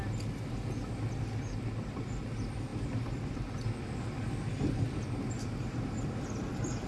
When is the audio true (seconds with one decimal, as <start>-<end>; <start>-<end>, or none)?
0.0-6.9

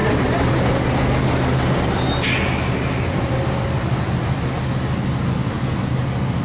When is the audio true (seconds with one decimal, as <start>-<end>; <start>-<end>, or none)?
0.0-1.5; 4.2-6.4

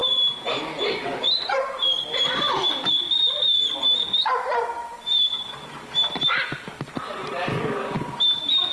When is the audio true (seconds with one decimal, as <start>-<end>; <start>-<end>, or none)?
3.0-4.9; 5.5-8.7

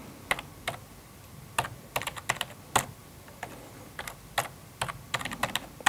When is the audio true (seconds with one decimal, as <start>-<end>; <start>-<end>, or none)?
0.0-5.9